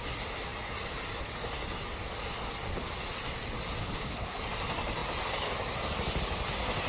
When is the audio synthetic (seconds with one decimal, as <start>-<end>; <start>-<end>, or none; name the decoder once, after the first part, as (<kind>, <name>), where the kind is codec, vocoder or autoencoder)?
3.8-4.4 (codec, HILCodec)

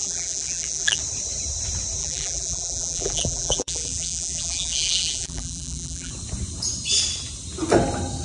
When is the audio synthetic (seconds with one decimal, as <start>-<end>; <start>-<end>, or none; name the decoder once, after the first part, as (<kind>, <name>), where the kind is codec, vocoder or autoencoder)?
0.0-1.0 (vocoder, BigVGAN v2); 2.0-6.1

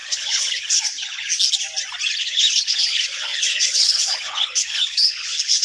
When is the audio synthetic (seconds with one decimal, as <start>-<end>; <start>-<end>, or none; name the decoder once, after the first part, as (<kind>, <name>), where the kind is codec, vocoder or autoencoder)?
0.0-1.3 (codec, HILCodec); 2.2-5.6

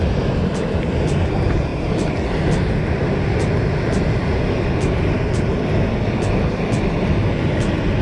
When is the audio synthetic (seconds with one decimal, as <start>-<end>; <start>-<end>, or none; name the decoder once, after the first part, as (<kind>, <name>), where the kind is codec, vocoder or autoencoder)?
none